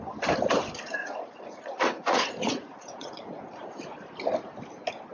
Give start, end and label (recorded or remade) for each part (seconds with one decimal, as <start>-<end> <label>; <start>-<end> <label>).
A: 0.0-1.0 recorded; 1.0-3.5 remade; 3.5-5.1 recorded